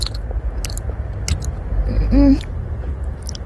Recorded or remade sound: recorded